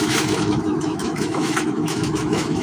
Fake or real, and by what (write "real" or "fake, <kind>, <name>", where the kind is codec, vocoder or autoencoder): fake, autoencoder, DAC-VAE